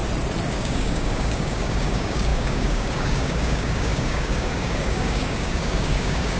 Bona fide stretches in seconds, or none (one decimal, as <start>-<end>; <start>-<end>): 0.0-0.5